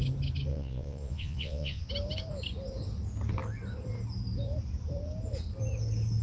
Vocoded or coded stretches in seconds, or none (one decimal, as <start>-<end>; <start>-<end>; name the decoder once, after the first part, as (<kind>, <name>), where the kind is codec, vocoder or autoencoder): 0.5-1.9 (vocoder, Vocos)